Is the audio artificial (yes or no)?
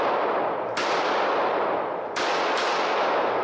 no